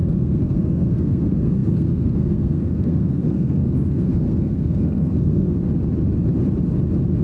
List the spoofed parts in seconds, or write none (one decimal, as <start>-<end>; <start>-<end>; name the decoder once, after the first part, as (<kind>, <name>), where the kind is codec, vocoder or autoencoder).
0.0-5.6 (codec, SNAC)